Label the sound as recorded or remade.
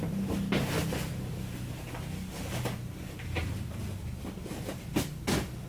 recorded